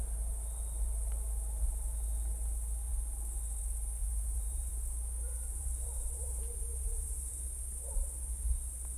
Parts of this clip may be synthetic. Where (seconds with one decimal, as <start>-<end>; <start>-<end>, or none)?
4.0-4.7; 5.5-7.3